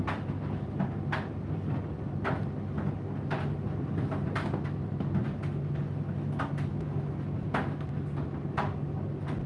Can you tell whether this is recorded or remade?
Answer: recorded